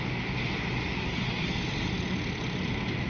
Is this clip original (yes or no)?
yes